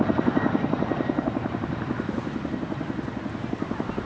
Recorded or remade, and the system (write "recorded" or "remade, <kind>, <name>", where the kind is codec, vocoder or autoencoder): recorded